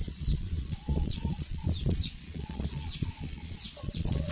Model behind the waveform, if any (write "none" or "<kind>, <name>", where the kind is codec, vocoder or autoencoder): vocoder, Vocos